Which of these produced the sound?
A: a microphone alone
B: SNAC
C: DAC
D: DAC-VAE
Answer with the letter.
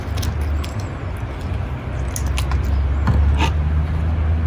A